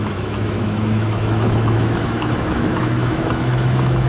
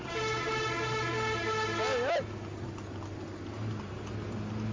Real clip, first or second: second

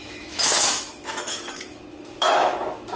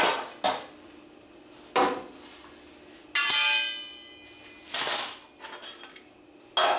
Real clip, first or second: second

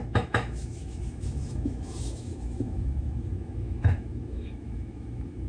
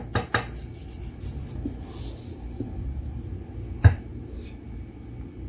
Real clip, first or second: second